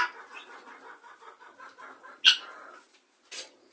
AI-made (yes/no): no